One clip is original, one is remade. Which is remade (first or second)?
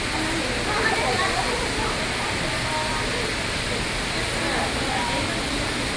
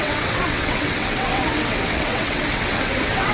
second